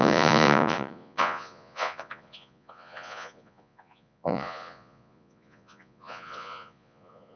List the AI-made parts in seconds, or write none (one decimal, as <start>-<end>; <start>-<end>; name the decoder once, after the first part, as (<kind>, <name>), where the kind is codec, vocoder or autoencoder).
0.0-7.4 (vocoder, Vocos)